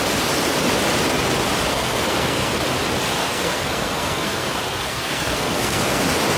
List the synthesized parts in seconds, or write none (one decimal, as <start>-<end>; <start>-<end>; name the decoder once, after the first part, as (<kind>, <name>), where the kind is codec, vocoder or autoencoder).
1.7-2.6 (codec, SNAC); 3.2-6.0